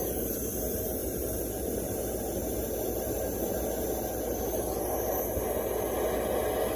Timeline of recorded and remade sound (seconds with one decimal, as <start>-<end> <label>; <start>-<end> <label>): 0.0-6.8 recorded

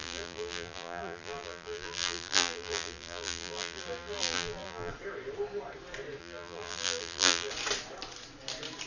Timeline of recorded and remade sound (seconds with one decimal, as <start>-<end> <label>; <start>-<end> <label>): 0.0-4.9 remade; 4.9-6.2 recorded; 6.2-7.5 remade; 7.5-8.9 recorded

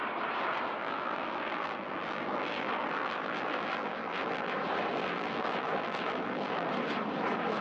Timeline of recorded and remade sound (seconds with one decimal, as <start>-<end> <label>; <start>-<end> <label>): 0.0-0.8 recorded; 0.8-4.5 remade; 4.5-4.9 recorded; 4.9-6.7 remade; 6.7-7.6 recorded

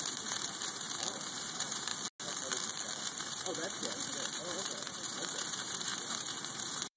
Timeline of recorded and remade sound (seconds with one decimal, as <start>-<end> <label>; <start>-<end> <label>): 0.0-1.9 remade; 1.9-3.0 recorded; 3.0-7.0 remade

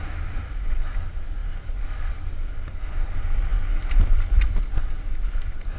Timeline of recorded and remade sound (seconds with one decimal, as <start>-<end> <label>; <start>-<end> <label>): 0.0-5.8 recorded

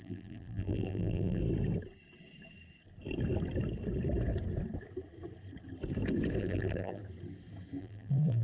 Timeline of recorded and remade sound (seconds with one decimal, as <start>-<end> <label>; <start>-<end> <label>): 0.0-1.4 remade; 1.4-6.4 recorded; 6.4-7.0 remade; 7.0-7.8 recorded; 7.8-8.4 remade

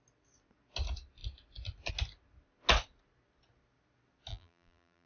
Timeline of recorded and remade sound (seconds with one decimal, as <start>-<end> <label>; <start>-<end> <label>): 0.0-4.3 recorded; 4.3-5.1 remade